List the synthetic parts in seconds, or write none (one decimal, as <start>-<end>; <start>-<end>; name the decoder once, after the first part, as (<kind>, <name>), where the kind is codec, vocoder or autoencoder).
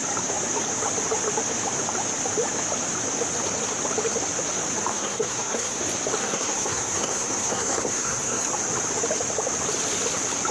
4.9-5.8 (codec, SNAC); 6.2-8.5